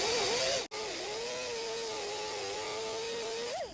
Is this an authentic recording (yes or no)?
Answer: yes